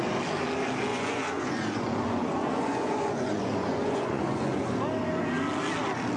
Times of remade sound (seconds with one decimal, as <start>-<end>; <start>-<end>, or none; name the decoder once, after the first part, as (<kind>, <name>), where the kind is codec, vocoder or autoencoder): 0.9-4.6 (vocoder, Vocos)